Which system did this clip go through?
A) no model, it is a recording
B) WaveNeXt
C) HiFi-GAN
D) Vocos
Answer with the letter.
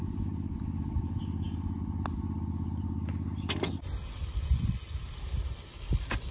A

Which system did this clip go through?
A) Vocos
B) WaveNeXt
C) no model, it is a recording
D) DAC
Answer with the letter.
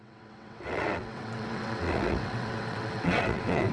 B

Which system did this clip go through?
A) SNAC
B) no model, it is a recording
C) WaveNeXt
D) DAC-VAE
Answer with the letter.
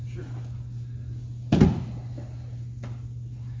B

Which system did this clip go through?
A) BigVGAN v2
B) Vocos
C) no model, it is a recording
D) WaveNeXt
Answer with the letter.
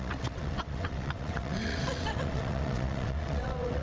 D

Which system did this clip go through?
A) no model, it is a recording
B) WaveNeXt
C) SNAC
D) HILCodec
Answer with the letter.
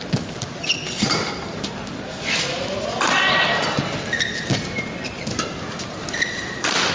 A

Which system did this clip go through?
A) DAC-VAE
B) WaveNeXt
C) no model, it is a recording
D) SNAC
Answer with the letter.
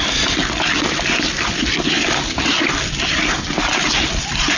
C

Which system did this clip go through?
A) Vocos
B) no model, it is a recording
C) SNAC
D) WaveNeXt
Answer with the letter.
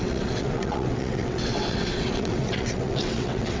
D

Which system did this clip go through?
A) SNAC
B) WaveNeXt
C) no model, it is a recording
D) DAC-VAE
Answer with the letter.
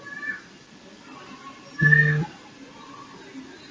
C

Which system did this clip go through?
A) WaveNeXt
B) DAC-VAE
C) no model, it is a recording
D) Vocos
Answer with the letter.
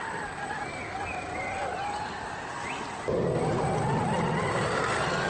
C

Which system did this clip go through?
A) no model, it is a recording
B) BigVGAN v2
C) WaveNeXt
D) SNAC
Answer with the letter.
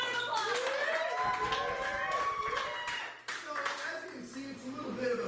A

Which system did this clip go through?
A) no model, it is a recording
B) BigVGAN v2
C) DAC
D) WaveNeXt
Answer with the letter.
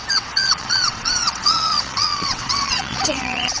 D